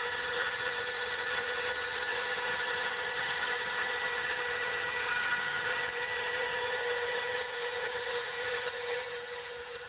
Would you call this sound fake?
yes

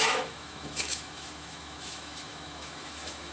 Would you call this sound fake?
yes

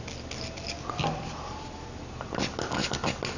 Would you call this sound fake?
no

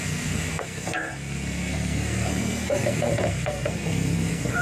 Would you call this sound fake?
yes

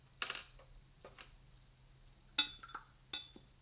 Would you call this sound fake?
no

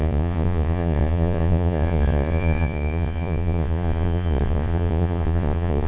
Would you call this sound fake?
yes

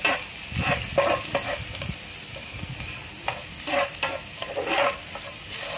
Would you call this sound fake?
no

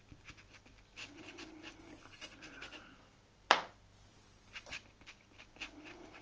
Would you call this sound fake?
no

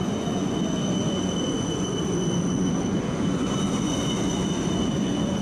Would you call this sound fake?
yes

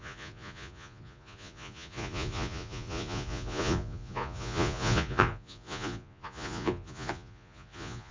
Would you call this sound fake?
yes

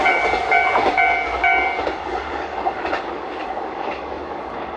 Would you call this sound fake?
yes